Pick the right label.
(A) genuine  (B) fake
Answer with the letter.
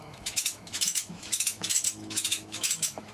B